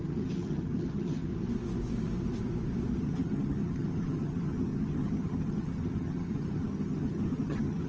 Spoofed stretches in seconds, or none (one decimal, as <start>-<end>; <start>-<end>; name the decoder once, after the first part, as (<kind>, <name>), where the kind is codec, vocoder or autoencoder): 0.0-1.3 (vocoder, HiFi-GAN); 3.0-7.9